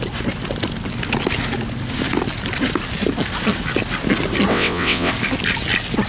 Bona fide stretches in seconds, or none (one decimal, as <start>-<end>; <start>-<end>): 0.0-4.5; 5.1-6.1